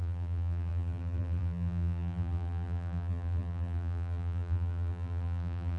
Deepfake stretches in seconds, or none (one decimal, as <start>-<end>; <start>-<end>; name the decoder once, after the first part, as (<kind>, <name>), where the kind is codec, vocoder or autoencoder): 0.0-5.8 (vocoder, BigVGAN v2)